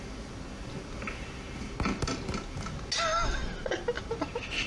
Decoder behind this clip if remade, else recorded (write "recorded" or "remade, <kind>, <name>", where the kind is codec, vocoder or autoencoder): recorded